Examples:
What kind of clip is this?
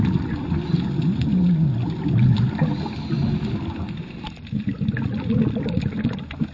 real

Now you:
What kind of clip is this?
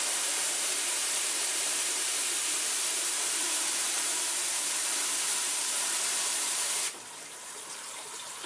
fake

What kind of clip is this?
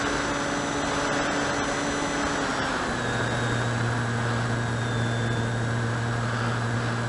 real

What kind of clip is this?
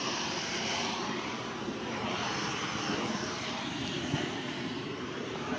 fake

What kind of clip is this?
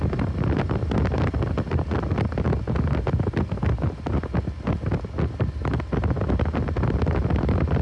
real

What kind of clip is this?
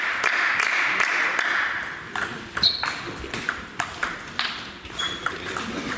real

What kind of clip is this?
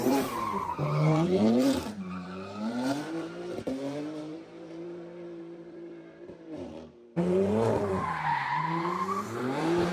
fake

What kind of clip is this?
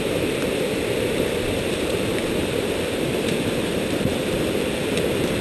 fake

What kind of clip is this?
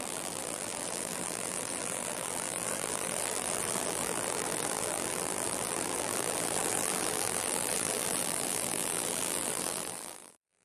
fake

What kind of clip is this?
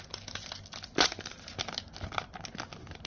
real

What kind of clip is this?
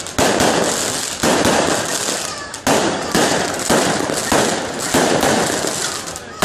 real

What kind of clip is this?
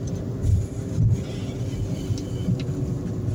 real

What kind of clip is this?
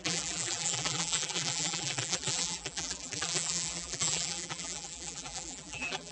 fake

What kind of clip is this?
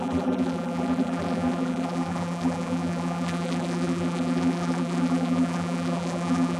fake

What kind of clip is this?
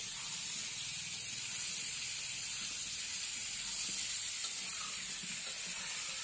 real